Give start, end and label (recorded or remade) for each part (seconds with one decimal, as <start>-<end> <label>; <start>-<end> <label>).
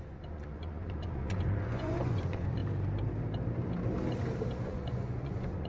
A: 0.0-2.6 remade; 2.6-4.6 recorded; 4.6-5.7 remade